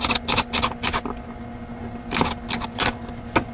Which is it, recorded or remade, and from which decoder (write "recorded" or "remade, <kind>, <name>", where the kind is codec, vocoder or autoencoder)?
recorded